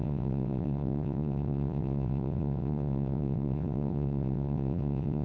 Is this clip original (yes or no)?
no